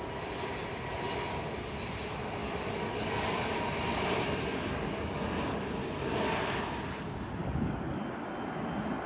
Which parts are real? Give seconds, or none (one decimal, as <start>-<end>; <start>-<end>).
0.0-2.4; 3.6-4.5; 5.2-7.4; 8.0-9.1